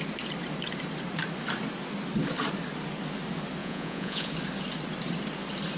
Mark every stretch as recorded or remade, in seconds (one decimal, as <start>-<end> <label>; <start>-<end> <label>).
0.0-3.6 recorded; 3.6-4.3 remade; 4.3-5.8 recorded